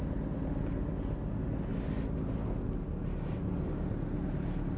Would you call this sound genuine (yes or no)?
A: yes